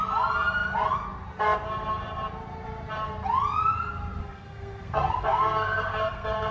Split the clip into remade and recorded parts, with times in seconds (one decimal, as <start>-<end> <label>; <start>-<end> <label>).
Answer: 0.0-4.2 recorded; 4.2-6.5 remade